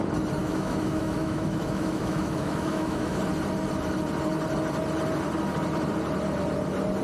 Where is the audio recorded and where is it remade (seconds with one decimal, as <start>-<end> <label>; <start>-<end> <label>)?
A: 0.0-0.4 recorded; 0.4-3.2 remade; 3.2-7.0 recorded